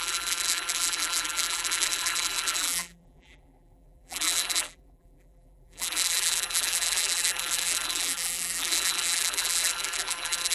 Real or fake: fake